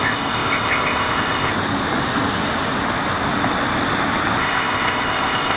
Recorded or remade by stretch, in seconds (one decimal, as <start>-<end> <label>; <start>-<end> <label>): 0.0-1.5 remade; 1.5-4.4 recorded; 4.4-5.6 remade